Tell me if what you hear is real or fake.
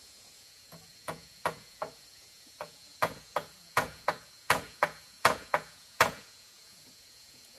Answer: fake